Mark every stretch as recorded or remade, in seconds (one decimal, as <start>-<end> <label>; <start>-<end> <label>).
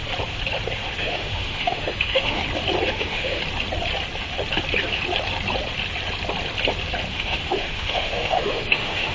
0.0-1.0 recorded; 1.0-2.4 remade; 2.4-2.9 recorded; 2.9-3.4 remade; 3.4-7.1 recorded; 7.1-9.1 remade